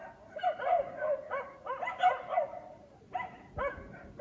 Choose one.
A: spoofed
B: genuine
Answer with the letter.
B